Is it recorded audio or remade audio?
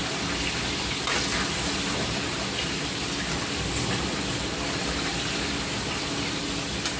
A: recorded